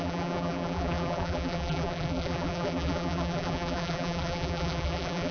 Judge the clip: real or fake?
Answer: fake